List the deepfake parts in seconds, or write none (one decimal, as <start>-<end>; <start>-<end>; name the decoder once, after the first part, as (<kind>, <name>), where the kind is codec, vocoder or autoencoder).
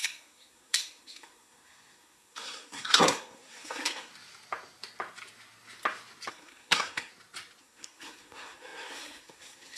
0.0-4.1 (codec, SNAC); 6.3-7.1; 7.6-9.8